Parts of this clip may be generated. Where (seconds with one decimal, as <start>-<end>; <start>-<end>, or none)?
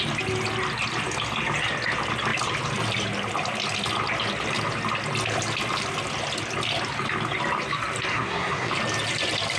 8.1-8.7